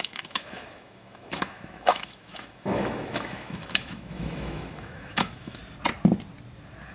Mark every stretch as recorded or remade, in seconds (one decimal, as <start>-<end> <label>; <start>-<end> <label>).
0.0-5.6 remade; 5.6-6.9 recorded